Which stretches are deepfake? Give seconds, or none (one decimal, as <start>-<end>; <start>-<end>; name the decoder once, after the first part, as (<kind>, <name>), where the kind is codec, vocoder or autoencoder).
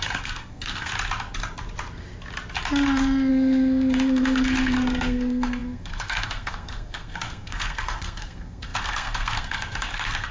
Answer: 0.0-0.9 (codec, SNAC); 3.3-10.3